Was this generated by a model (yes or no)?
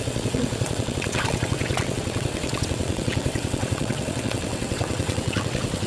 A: yes